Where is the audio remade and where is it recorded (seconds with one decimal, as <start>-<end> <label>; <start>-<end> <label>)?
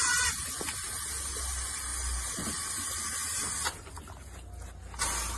0.0-5.4 recorded